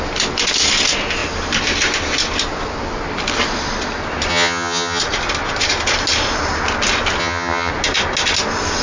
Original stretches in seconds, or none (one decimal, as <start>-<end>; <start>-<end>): 0.0-4.3; 5.0-7.2; 7.7-8.8